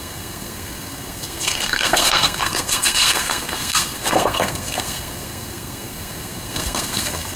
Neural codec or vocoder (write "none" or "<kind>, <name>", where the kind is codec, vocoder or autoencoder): codec, SNAC